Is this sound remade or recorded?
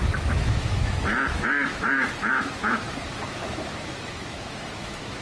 remade